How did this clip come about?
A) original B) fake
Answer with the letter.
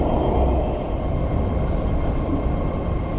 A